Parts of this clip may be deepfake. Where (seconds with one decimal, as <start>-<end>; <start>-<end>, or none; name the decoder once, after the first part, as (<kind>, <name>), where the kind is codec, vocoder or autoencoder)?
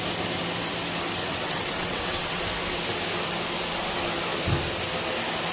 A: 1.2-2.4 (vocoder, WaveNeXt)